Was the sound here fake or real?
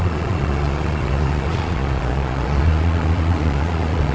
fake